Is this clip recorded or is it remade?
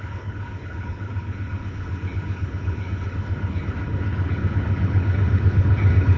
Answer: remade